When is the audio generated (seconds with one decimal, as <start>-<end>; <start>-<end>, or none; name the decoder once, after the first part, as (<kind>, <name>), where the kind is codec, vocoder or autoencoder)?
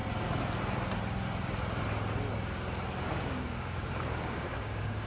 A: 3.1-5.1 (codec, DAC)